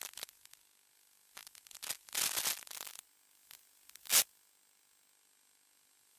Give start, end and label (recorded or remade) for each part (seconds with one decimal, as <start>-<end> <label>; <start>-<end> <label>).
0.0-6.2 recorded